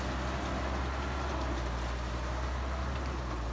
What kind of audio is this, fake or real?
real